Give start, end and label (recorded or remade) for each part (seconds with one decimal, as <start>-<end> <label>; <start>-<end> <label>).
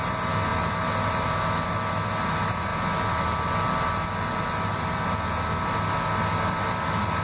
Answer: 0.0-7.2 recorded